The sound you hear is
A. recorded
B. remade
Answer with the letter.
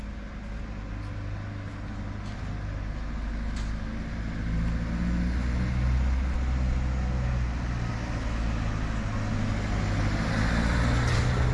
A